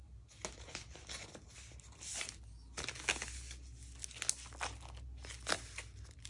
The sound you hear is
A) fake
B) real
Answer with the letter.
B